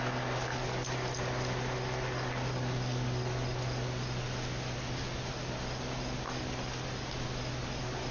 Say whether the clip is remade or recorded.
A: recorded